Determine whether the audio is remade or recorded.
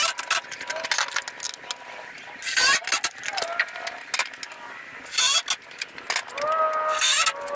recorded